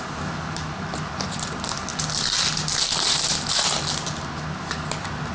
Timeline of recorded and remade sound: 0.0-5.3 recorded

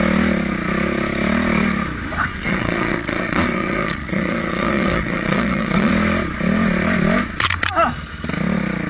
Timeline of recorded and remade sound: 0.0-2.3 recorded; 2.3-5.9 remade; 5.9-8.9 recorded

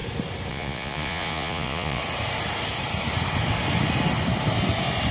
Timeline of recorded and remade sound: 0.0-0.5 recorded; 0.5-2.0 remade; 2.0-5.1 recorded

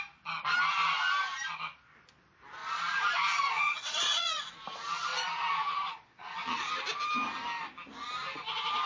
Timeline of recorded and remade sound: 0.0-2.6 recorded; 2.6-4.5 remade; 4.5-5.1 recorded; 5.1-6.7 remade; 6.7-8.9 recorded